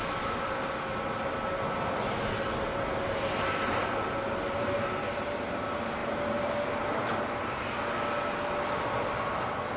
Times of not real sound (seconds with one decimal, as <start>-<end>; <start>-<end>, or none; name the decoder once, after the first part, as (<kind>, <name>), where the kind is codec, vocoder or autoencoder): none

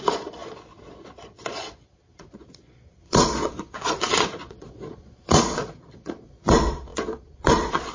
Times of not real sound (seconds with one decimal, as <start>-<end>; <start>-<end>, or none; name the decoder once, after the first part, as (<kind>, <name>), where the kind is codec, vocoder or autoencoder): 0.0-7.9 (vocoder, Vocos)

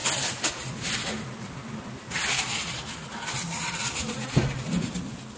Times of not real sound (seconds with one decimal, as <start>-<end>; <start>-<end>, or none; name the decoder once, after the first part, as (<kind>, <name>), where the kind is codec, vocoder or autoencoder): none

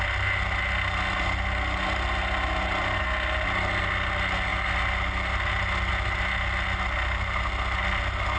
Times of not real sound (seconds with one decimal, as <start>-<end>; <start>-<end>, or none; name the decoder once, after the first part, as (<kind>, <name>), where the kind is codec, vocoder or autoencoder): none

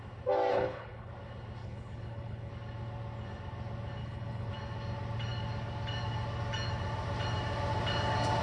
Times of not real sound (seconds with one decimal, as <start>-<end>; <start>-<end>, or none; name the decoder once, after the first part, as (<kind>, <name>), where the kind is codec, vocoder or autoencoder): 0.5-1.1 (codec, HILCodec); 1.6-2.5; 4.0-4.5